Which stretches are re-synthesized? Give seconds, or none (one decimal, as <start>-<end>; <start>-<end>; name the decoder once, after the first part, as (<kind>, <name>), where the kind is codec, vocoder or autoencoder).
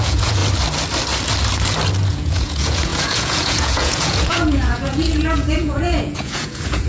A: 0.0-0.4 (vocoder, Vocos); 2.1-6.9